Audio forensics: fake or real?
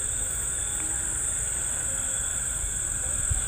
real